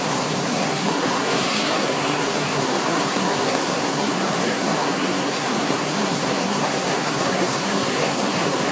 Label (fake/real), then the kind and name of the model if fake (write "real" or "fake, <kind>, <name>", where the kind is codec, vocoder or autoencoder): fake, codec, SNAC